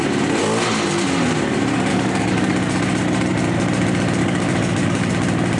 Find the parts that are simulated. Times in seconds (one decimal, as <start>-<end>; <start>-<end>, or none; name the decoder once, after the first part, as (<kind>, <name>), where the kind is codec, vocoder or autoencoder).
1.9-2.5 (codec, DAC); 4.2-5.1